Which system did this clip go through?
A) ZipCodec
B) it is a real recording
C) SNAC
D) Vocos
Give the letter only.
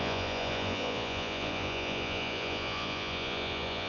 D